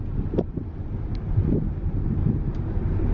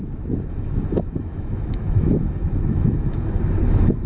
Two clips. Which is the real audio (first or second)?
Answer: first